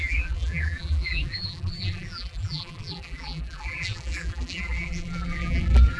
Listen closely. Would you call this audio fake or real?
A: fake